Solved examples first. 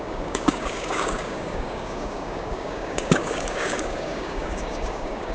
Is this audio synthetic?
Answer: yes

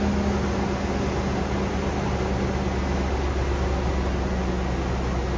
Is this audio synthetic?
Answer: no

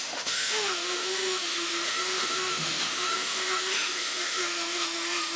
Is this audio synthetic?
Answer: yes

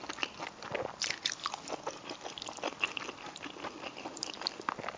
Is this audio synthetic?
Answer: no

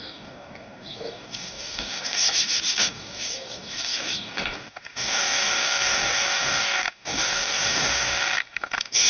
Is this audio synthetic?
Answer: yes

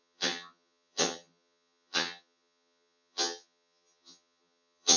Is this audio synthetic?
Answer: yes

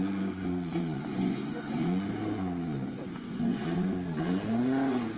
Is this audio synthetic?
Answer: yes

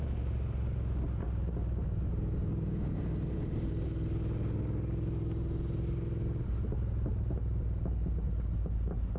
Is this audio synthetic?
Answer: no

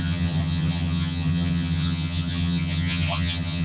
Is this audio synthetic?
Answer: yes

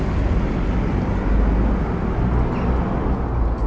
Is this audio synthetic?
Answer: no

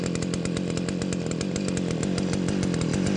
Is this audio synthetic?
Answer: no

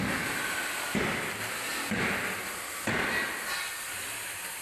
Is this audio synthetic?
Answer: no